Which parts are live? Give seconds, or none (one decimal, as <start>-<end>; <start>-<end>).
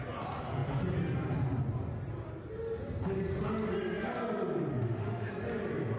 0.0-4.7; 5.3-6.0